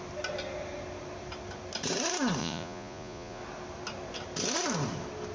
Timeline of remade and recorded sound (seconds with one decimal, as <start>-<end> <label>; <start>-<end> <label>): 0.0-2.4 recorded; 2.4-3.4 remade; 3.4-5.3 recorded

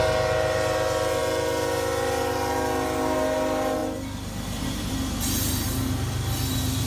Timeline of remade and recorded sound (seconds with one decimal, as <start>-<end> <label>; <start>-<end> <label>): 0.0-6.9 recorded